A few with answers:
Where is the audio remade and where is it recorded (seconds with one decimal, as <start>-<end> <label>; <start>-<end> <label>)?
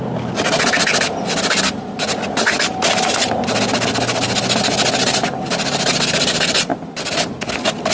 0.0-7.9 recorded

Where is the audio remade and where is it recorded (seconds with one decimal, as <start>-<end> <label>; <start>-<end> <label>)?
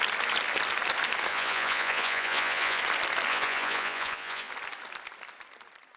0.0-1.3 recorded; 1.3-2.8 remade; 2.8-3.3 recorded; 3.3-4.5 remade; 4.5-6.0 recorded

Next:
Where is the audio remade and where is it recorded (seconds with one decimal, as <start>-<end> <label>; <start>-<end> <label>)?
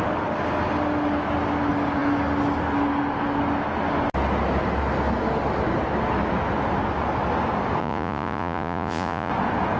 0.0-7.8 recorded; 7.8-9.3 remade; 9.3-9.8 recorded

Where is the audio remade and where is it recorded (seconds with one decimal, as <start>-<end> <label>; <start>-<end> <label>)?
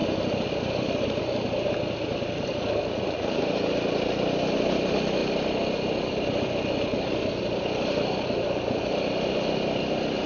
0.0-2.9 recorded; 2.9-3.4 remade; 3.4-10.3 recorded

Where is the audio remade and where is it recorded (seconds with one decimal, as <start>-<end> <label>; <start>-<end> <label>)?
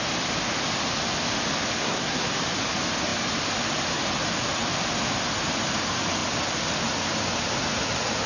0.0-1.8 recorded; 1.8-2.3 remade; 2.3-8.3 recorded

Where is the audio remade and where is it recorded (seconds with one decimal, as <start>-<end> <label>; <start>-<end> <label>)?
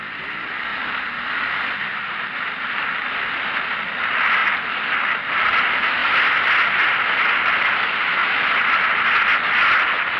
0.0-10.2 recorded